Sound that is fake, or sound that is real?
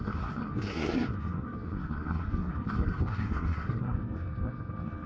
fake